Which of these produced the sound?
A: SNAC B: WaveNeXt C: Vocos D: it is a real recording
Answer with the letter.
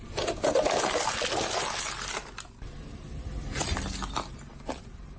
D